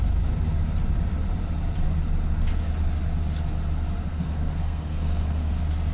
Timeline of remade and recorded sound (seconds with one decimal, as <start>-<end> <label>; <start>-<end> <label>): 0.0-4.1 recorded; 4.1-5.5 remade; 5.5-5.9 recorded